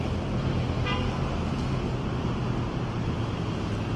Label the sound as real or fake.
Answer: real